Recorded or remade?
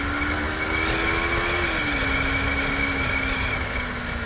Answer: recorded